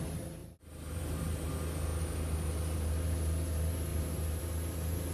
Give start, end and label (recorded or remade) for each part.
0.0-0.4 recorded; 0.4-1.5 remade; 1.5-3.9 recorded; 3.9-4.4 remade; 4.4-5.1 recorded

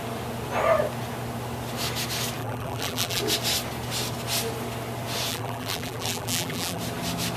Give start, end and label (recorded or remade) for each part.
0.0-2.4 recorded; 2.4-3.2 remade; 3.2-5.3 recorded; 5.3-6.8 remade; 6.8-7.4 recorded

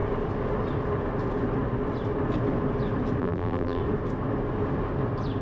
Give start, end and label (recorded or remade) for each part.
0.0-3.2 recorded; 3.2-3.8 remade; 3.8-5.4 recorded

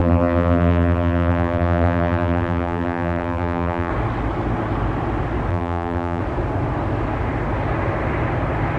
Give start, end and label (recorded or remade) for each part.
0.0-3.9 remade; 3.9-5.5 recorded; 5.5-6.2 remade; 6.2-8.8 recorded